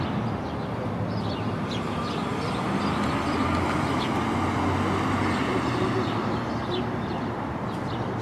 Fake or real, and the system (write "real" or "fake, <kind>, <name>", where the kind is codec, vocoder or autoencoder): real